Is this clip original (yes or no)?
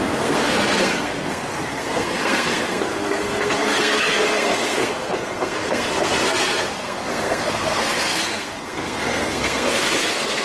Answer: no